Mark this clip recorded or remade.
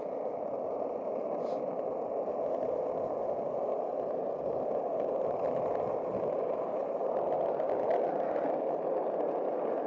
recorded